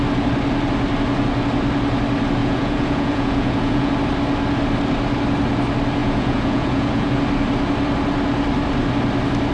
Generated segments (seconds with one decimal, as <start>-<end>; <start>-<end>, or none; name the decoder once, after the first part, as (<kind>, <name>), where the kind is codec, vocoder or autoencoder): 2.4-3.9 (vocoder, Vocos); 6.0-7.2